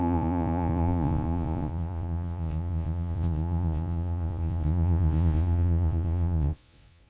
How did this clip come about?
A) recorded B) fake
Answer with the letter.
B